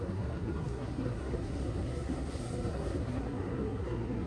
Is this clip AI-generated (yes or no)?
yes